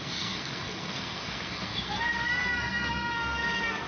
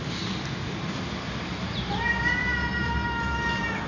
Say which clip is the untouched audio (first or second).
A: second